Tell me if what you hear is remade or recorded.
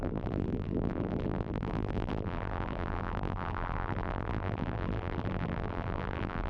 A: remade